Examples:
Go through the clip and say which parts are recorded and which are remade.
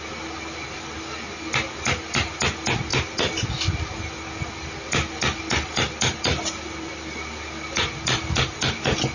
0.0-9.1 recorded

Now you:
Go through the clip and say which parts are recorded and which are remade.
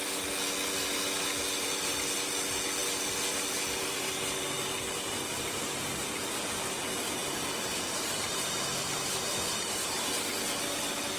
0.0-2.8 recorded; 2.8-5.8 remade; 5.8-7.2 recorded; 7.2-10.2 remade; 10.2-11.2 recorded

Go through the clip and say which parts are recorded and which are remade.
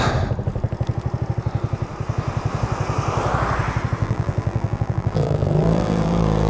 0.0-4.0 recorded; 4.0-6.5 remade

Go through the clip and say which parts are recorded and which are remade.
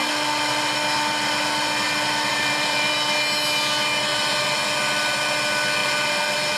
0.0-2.3 recorded; 2.3-2.9 remade; 2.9-4.1 recorded; 4.1-4.6 remade; 4.6-5.8 recorded; 5.8-6.6 remade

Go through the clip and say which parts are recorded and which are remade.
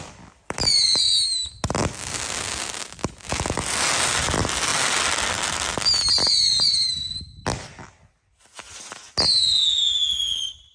0.0-10.7 recorded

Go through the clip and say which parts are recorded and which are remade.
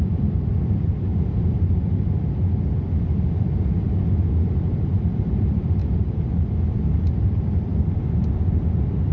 0.0-1.1 remade; 1.1-4.3 recorded; 4.3-5.8 remade; 5.8-6.7 recorded; 6.7-9.1 remade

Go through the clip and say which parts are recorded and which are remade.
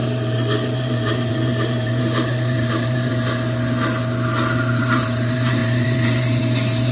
0.0-3.1 remade; 3.1-4.8 recorded; 4.8-6.9 remade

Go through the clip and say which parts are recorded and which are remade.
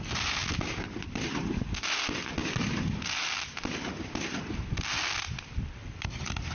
0.0-6.5 recorded